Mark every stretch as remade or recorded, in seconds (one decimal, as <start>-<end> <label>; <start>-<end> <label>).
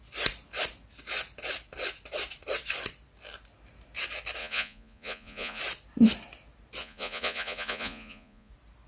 0.0-4.4 recorded; 4.4-5.6 remade; 5.6-6.8 recorded; 6.8-8.5 remade; 8.5-8.9 recorded